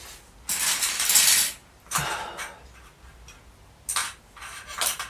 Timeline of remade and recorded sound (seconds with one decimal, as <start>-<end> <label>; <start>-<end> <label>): 0.0-1.6 recorded; 1.6-2.4 remade; 2.4-4.0 recorded; 4.0-5.1 remade